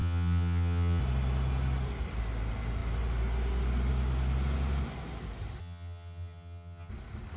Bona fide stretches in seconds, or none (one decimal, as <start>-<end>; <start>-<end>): 1.0-5.6; 6.9-7.4